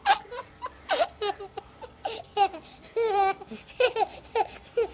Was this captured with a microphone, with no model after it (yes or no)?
yes